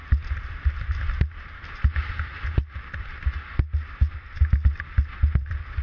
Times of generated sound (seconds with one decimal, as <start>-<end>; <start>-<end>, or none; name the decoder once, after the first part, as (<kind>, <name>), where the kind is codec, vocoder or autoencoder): none